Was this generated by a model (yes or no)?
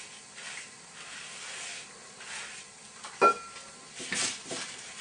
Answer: no